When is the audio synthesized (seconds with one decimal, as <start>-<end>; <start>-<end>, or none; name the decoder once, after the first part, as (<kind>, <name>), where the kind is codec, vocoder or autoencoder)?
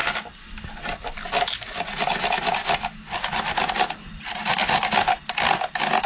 none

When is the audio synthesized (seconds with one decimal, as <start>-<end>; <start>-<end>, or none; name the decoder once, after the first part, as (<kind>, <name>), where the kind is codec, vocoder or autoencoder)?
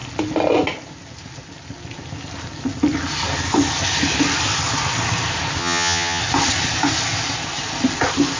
5.6-6.2 (vocoder, HiFi-GAN)